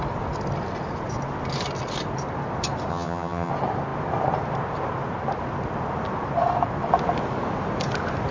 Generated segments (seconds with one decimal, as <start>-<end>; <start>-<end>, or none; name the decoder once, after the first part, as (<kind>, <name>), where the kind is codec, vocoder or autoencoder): 2.9-3.5 (vocoder, HiFi-GAN)